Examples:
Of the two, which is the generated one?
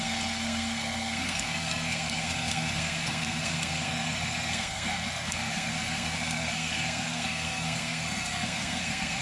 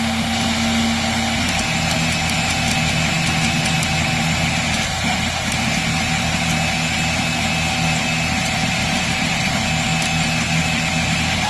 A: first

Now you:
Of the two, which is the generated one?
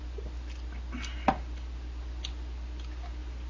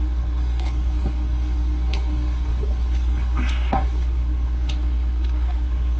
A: second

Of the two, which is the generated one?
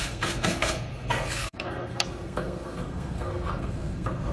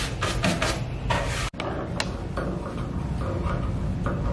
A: first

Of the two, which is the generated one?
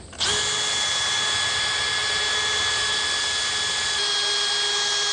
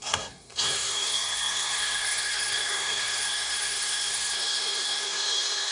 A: second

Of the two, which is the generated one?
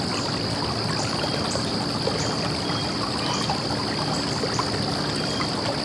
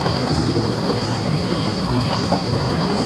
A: second